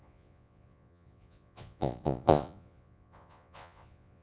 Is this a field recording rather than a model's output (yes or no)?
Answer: no